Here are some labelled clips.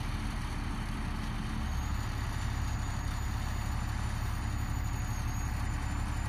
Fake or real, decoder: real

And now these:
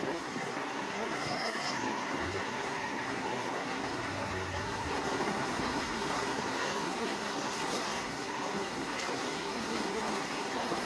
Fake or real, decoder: fake, codec, SNAC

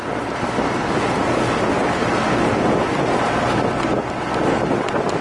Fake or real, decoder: real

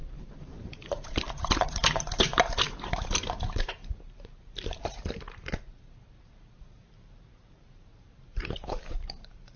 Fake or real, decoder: fake, vocoder, BigVGAN v2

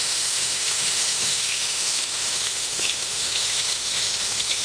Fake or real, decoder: fake, autoencoder, DAC-VAE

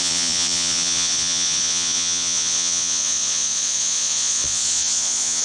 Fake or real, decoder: fake, vocoder, Vocos